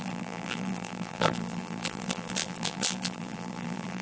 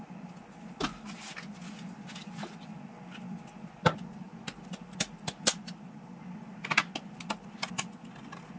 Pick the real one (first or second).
second